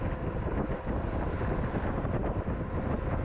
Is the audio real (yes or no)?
yes